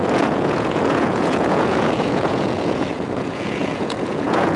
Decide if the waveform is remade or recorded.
remade